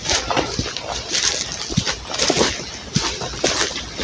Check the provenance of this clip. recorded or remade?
recorded